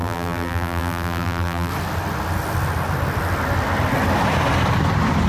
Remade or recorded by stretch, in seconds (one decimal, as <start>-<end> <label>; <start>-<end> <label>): 0.0-1.7 remade; 1.7-5.3 recorded